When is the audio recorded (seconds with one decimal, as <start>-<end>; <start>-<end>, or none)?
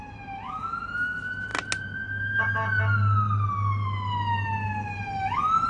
0.0-5.7